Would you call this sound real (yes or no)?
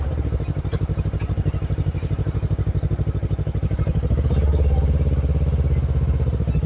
yes